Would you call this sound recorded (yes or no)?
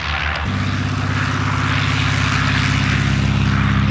yes